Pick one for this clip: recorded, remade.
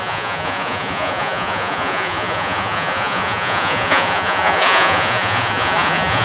remade